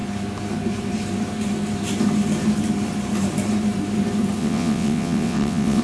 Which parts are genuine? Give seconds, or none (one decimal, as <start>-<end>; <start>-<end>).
0.0-4.4